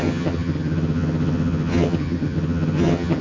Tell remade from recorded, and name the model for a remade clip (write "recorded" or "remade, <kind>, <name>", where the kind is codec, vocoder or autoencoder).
remade, vocoder, HiFi-GAN